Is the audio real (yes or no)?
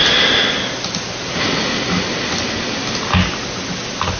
yes